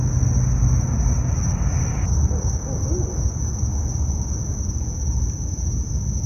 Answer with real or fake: real